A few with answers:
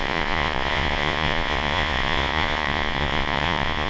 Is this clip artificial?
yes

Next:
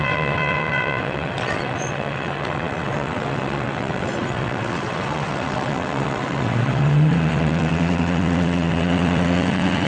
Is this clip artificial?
yes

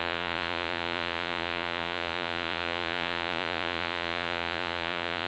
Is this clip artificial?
yes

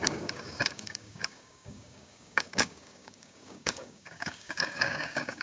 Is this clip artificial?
yes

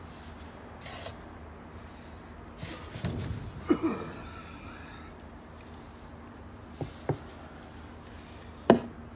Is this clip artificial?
no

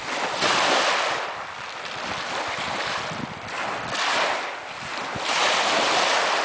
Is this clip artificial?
no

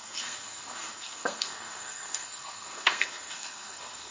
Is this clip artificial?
yes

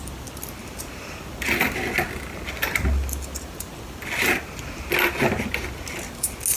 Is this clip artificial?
no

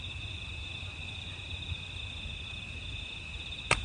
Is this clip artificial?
no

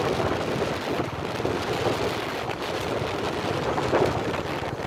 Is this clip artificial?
no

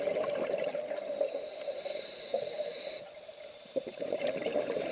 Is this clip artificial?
yes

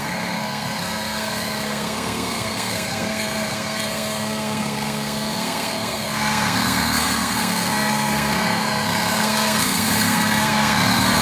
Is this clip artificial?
yes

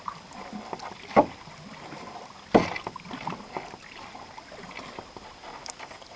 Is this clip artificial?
no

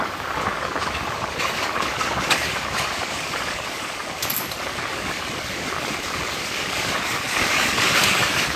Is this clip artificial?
yes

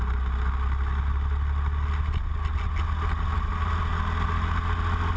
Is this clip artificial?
no